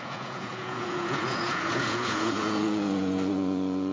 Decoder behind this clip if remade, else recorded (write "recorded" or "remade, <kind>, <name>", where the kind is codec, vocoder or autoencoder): remade, vocoder, Vocos